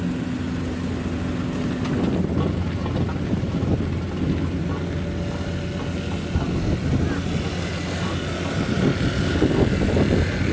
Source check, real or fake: real